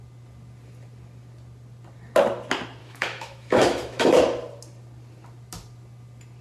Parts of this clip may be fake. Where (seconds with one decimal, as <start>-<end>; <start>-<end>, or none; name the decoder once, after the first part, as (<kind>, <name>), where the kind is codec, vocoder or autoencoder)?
2.8-4.2 (autoencoder, DAC-VAE)